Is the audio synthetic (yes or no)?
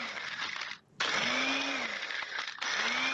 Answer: no